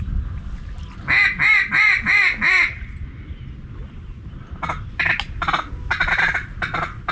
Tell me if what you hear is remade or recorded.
recorded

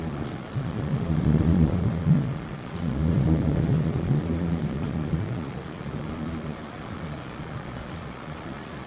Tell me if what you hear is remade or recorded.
remade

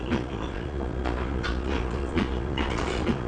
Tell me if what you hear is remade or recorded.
remade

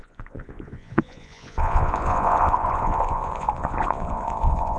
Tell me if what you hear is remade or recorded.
remade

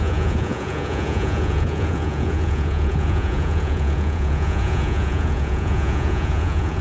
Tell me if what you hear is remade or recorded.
remade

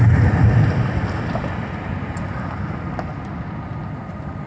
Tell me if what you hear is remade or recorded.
recorded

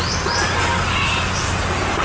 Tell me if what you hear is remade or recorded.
recorded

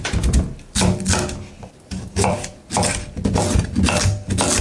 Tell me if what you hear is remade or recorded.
recorded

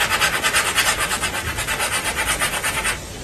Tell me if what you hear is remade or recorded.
recorded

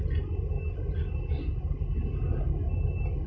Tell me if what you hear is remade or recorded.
recorded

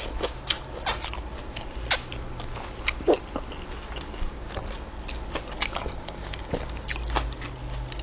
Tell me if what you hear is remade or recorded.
recorded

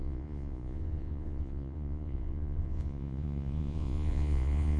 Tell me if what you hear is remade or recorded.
remade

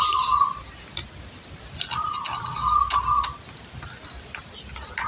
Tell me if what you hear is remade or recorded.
recorded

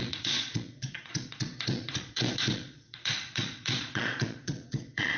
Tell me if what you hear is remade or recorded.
remade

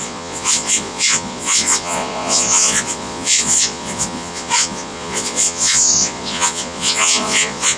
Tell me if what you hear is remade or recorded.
remade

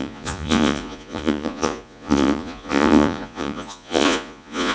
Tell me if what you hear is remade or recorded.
remade